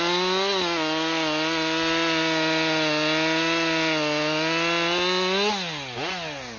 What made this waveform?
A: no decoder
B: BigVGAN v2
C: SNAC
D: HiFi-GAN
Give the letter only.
A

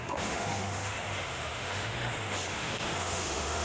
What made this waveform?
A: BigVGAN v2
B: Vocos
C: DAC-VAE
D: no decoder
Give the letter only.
C